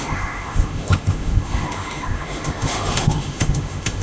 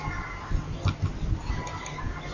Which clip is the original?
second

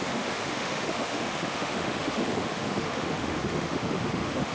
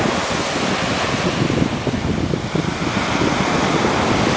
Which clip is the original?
second